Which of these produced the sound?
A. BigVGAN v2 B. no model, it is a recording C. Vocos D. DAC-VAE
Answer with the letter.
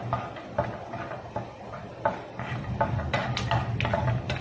B